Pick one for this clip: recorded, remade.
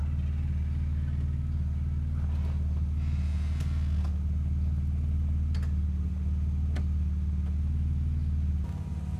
recorded